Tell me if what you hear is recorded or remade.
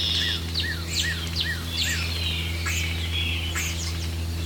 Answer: recorded